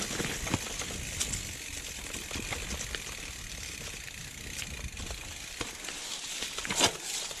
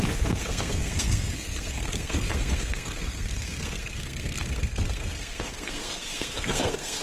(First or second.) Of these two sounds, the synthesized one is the second